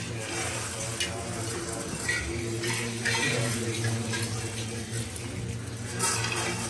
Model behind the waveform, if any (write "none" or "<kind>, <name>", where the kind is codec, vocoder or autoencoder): none